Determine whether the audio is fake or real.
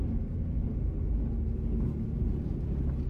real